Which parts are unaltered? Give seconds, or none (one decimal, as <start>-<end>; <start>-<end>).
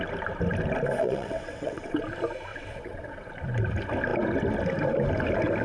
0.0-1.0; 2.0-2.5; 3.3-5.6